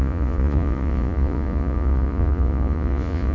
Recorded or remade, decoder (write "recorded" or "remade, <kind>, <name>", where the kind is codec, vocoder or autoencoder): remade, vocoder, Vocos